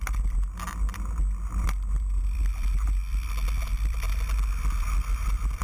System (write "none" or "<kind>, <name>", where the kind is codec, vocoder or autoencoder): none